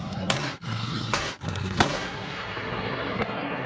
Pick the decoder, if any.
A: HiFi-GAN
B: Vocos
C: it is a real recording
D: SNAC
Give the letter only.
D